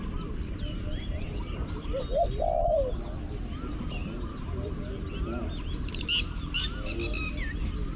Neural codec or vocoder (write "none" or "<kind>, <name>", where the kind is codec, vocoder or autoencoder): none